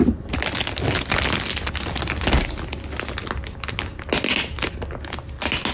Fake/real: real